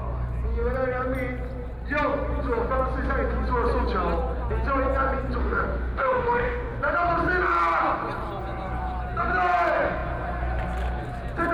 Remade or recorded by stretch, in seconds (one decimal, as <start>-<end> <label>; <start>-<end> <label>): 0.0-5.4 recorded; 5.4-6.8 remade; 6.8-11.5 recorded